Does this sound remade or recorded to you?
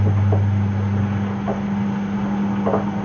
recorded